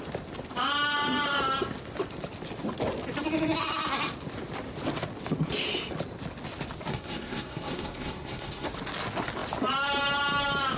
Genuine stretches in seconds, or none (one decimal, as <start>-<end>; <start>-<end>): 0.0-6.9; 8.7-10.8